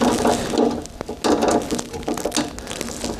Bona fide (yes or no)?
yes